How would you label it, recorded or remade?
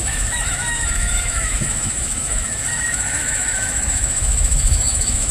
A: remade